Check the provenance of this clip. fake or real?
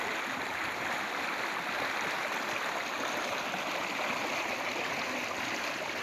real